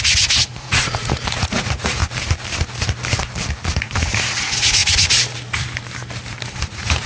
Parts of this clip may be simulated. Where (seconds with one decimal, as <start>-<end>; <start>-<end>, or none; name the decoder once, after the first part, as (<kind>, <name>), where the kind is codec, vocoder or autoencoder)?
0.0-2.0 (vocoder, Vocos); 3.7-4.8; 6.6-7.1